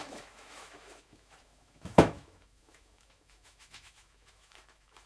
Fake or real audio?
fake